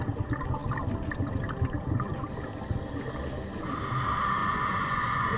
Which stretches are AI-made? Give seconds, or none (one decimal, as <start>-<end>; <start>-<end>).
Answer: 4.4-5.4